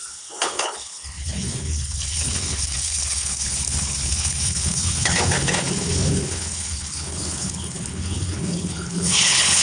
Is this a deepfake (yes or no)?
yes